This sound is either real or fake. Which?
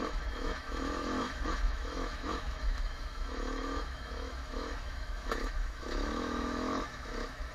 fake